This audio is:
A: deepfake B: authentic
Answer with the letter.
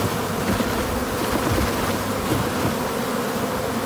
B